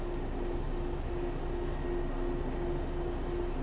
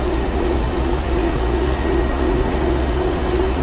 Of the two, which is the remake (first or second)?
second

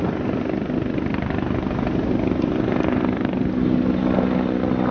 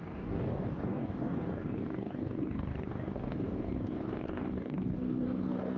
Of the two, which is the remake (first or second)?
second